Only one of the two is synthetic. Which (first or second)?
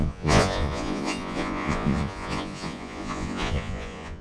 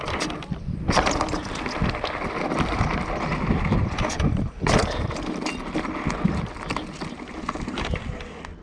first